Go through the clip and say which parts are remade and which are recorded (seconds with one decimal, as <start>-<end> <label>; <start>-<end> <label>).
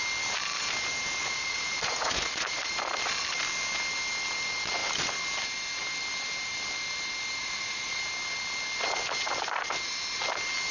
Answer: 0.0-1.2 recorded; 1.2-2.7 remade; 2.7-7.4 recorded; 7.4-8.0 remade; 8.0-10.7 recorded